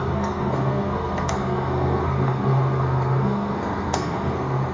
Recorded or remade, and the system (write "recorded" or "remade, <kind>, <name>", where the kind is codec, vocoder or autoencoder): remade, codec, SNAC